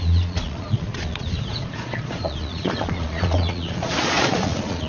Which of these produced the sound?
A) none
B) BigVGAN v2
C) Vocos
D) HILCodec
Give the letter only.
C